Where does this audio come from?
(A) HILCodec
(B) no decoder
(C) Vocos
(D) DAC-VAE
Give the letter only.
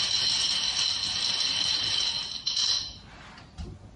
B